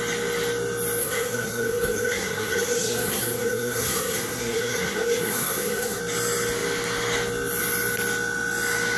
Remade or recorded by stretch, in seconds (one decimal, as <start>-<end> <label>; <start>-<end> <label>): 0.0-1.0 recorded; 1.0-6.0 remade; 6.0-9.0 recorded

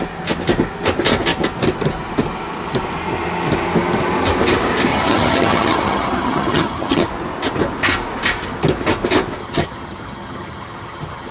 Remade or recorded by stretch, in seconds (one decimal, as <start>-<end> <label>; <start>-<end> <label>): 0.0-4.9 recorded; 4.9-7.1 remade; 7.1-9.4 recorded; 9.4-11.3 remade

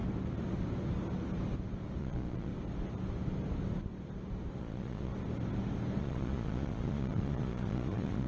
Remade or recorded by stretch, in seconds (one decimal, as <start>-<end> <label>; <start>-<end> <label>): 0.0-2.0 recorded; 2.0-2.5 remade; 2.5-4.6 recorded; 4.6-5.1 remade; 5.1-6.0 recorded; 6.0-8.3 remade

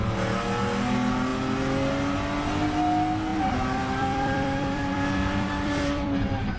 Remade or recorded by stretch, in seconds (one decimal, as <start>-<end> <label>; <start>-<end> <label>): 0.0-3.3 recorded; 3.3-6.6 remade

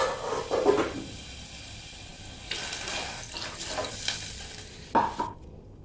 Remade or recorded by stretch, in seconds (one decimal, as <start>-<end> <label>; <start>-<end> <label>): 0.0-5.8 recorded

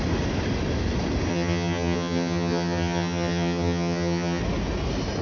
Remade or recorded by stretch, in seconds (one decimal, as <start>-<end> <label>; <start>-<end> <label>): 0.0-1.3 recorded; 1.3-4.4 remade; 4.4-5.2 recorded

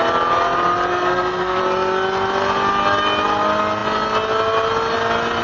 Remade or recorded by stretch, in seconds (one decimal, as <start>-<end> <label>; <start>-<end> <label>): 0.0-0.9 recorded; 0.9-1.6 remade; 1.6-5.4 recorded

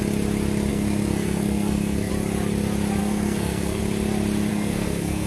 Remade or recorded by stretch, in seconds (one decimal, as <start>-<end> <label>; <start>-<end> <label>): 0.0-0.7 recorded; 0.7-2.1 remade; 2.1-3.0 recorded; 3.0-3.8 remade; 3.8-4.5 recorded; 4.5-5.3 remade